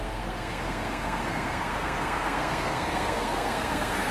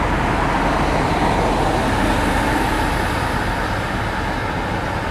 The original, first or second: second